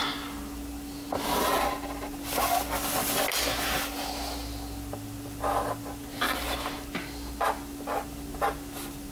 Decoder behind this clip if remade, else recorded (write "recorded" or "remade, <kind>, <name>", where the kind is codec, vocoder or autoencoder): recorded